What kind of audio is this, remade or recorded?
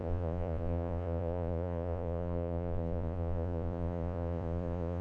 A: remade